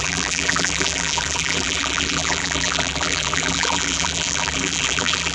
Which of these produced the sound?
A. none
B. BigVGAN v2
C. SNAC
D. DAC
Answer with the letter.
B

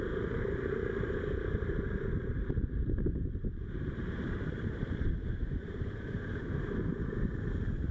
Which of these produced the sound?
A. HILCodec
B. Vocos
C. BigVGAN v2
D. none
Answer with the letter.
C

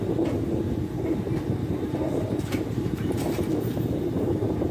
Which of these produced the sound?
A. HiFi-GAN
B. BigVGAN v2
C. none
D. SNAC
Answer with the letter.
B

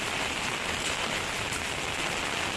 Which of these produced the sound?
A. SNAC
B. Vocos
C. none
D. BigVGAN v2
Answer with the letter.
C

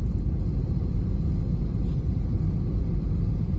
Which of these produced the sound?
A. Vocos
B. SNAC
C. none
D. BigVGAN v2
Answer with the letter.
C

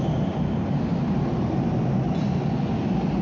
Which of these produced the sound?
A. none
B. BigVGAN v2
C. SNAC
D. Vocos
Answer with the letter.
A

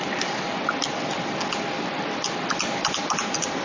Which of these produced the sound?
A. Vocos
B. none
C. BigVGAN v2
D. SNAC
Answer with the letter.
B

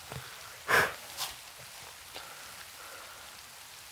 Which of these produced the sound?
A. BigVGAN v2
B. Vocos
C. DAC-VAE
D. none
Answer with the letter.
D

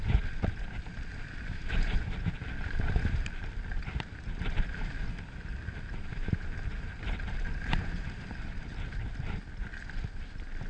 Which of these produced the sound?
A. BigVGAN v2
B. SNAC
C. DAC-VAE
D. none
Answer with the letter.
D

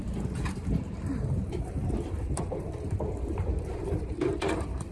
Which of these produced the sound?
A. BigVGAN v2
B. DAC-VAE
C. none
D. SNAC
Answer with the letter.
A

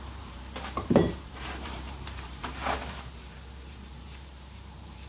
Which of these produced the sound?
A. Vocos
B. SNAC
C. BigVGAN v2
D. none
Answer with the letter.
C